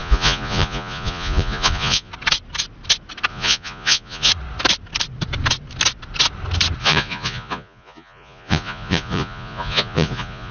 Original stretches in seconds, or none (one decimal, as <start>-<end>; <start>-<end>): 2.1-3.3; 4.3-6.8